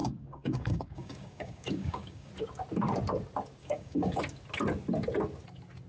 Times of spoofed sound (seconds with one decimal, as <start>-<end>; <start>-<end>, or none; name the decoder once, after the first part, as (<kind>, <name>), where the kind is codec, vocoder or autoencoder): 0.0-2.3 (codec, DAC); 3.6-4.2